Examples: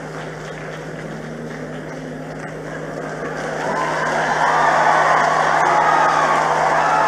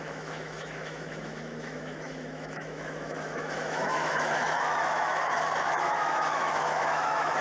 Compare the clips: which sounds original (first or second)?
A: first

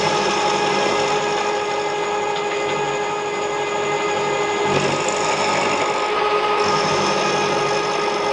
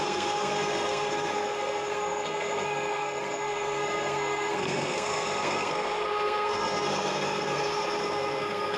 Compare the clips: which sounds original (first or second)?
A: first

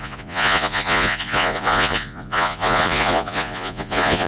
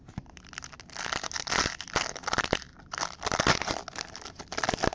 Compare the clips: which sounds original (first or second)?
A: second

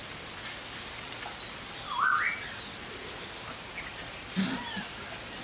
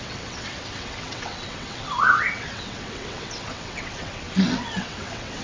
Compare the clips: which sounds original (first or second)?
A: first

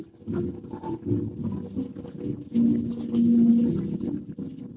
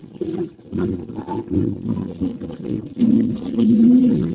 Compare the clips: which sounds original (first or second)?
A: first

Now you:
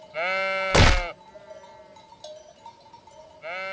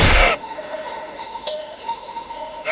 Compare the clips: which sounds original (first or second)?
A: first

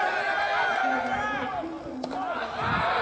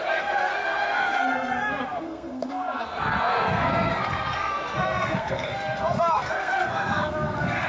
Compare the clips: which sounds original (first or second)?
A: first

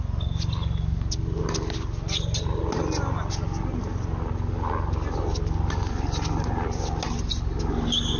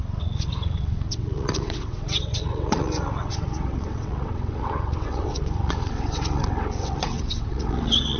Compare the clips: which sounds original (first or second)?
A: first